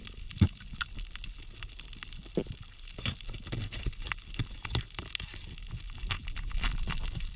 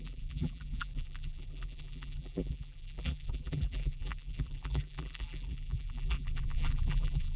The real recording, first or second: first